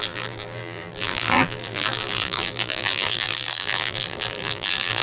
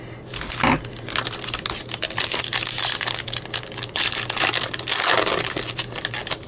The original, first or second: second